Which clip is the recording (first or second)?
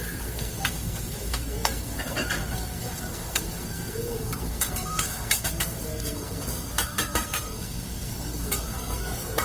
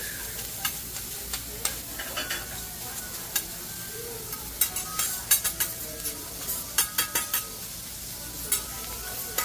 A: second